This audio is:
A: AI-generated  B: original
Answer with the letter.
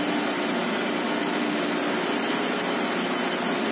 B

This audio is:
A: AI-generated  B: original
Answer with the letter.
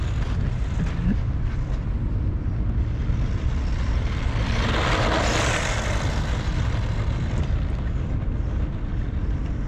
B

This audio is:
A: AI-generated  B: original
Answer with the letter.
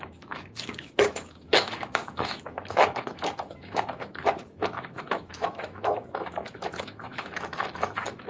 A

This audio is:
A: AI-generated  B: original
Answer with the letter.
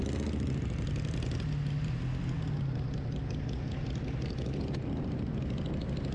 B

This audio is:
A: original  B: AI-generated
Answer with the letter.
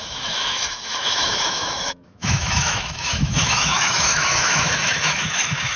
B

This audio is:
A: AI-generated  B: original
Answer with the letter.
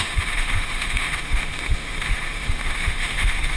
A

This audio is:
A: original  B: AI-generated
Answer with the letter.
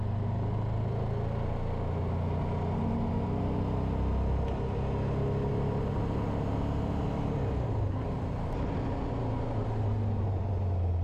A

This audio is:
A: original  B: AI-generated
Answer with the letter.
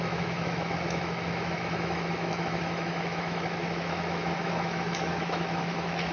B